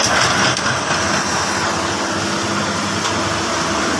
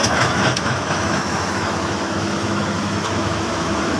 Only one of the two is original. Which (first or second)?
first